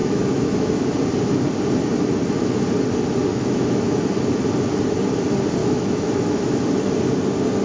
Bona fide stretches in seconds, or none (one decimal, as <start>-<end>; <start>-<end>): 0.7-3.3; 4.0-5.6; 6.6-7.6